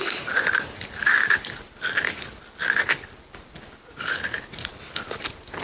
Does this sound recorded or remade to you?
recorded